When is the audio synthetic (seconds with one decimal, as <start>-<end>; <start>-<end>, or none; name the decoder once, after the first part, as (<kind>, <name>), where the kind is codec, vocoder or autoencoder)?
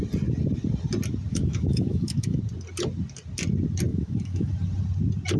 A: 1.3-2.4 (autoencoder, DAC-VAE); 3.9-4.5